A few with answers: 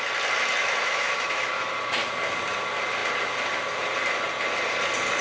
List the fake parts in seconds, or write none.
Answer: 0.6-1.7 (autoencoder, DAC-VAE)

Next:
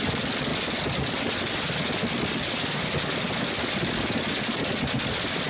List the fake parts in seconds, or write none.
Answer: none